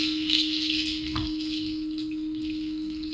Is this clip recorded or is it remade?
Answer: remade